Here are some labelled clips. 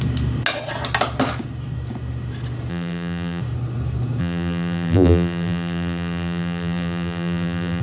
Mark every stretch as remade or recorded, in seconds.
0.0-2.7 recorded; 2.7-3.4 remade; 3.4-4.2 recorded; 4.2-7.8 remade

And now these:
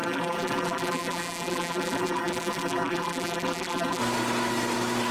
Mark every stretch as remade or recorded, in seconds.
0.0-4.0 remade; 4.0-5.1 recorded